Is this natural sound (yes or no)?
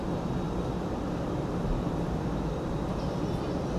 yes